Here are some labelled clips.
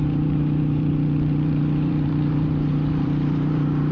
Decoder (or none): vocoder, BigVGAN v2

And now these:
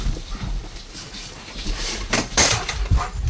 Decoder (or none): vocoder, BigVGAN v2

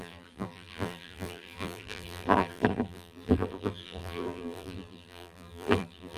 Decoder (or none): vocoder, BigVGAN v2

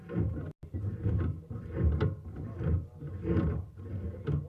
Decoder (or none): none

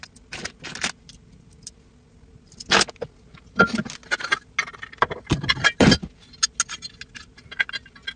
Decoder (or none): none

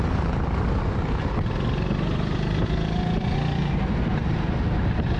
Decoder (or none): none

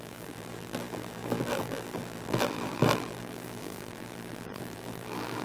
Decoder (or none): vocoder, BigVGAN v2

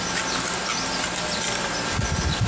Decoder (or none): vocoder, BigVGAN v2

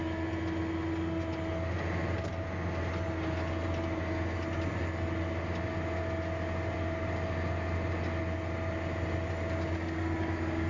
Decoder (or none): none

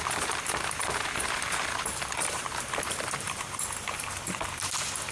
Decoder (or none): vocoder, BigVGAN v2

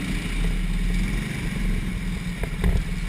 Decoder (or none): none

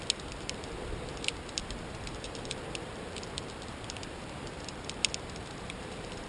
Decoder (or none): vocoder, BigVGAN v2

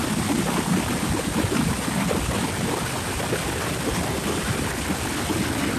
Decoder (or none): none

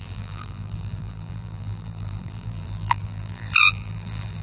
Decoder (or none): vocoder, BigVGAN v2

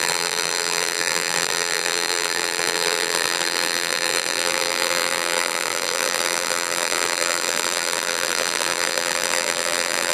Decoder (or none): vocoder, BigVGAN v2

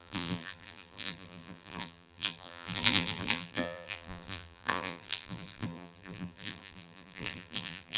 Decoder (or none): vocoder, BigVGAN v2